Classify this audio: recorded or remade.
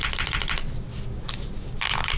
recorded